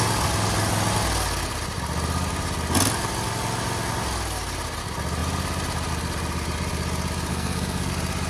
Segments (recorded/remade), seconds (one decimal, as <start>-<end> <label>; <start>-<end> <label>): 0.0-7.3 recorded; 7.3-7.9 remade; 7.9-8.3 recorded